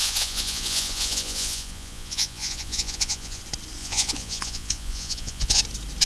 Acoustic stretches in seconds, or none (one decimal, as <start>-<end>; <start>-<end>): 3.4-3.8; 5.6-6.1